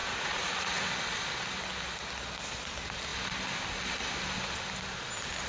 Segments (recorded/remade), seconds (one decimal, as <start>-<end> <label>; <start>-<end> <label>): 0.0-0.9 remade; 0.9-5.5 recorded